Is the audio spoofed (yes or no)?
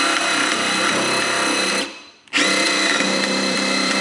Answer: yes